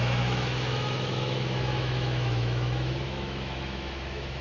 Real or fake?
fake